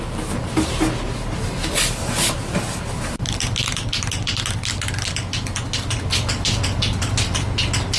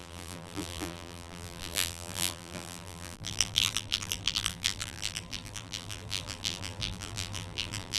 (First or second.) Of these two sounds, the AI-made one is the second